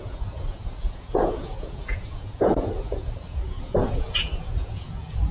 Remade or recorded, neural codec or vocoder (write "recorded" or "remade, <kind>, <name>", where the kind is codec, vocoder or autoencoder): remade, vocoder, Vocos